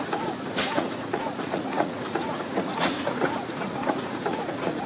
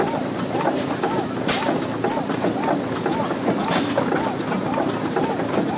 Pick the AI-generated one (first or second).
first